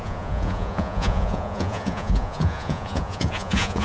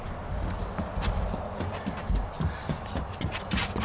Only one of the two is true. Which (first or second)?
second